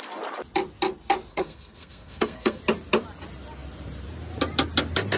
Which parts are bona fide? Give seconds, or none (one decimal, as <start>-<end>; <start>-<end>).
0.0-1.3; 2.6-5.2